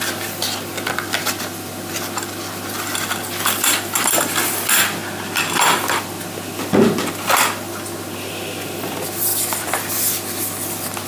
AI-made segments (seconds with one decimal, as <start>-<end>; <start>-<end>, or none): 0.0-5.0; 7.1-11.1